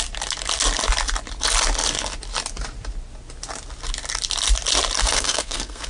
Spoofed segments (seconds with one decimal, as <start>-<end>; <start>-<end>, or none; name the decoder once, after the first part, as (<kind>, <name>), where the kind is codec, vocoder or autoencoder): 5.0-5.9 (codec, SNAC)